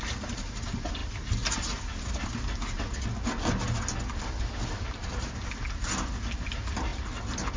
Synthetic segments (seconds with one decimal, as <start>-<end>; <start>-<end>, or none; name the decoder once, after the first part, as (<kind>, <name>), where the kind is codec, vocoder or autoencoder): none